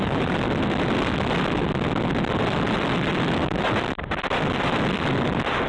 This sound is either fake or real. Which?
real